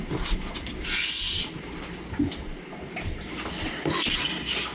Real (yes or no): yes